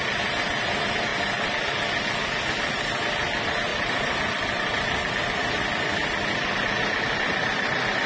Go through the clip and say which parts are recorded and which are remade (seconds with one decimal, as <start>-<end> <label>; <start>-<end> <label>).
0.0-3.7 recorded; 3.7-5.1 remade; 5.1-8.1 recorded